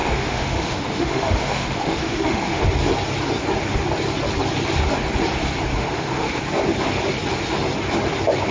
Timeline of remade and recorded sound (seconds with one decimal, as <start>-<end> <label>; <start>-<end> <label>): 0.0-2.6 remade; 2.6-5.8 recorded; 5.8-6.4 remade; 6.4-8.5 recorded